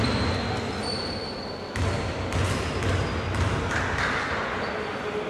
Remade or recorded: recorded